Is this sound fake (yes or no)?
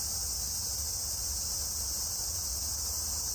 no